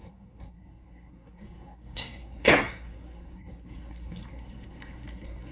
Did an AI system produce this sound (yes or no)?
yes